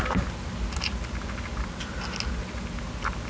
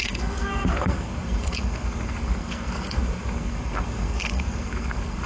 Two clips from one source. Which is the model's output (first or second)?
second